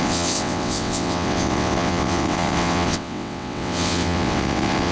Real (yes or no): no